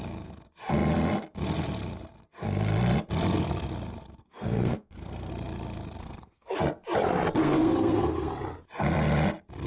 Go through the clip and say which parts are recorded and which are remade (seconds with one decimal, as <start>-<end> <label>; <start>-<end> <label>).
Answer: 0.0-4.2 recorded; 4.2-5.3 remade; 5.3-6.0 recorded; 6.0-6.6 remade; 6.6-7.4 recorded; 7.4-8.3 remade; 8.3-9.7 recorded